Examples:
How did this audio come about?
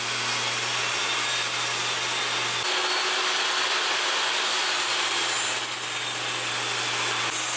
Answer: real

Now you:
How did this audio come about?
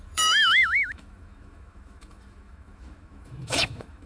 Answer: fake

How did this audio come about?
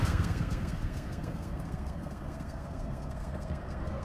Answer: fake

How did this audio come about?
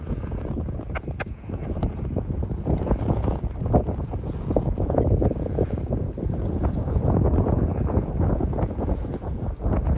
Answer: fake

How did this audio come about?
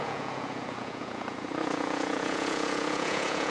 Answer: fake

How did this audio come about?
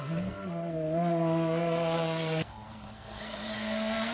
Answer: fake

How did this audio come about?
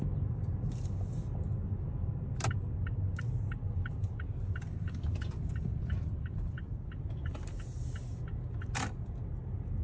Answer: real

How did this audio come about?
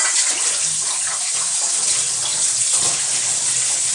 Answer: real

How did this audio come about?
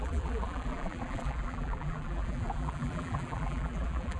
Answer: fake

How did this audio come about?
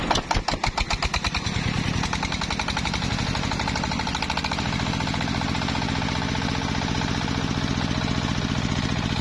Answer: real